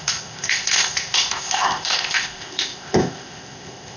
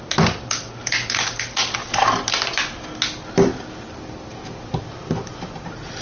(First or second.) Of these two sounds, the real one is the second